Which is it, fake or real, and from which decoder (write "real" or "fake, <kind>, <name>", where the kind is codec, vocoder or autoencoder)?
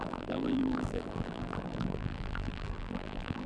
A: fake, vocoder, BigVGAN v2